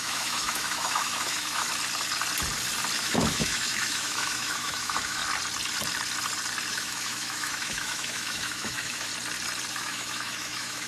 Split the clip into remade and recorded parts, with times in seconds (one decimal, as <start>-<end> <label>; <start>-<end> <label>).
0.0-1.7 remade; 1.7-3.0 recorded; 3.0-5.2 remade; 5.2-6.7 recorded; 6.7-9.1 remade; 9.1-9.7 recorded; 9.7-10.9 remade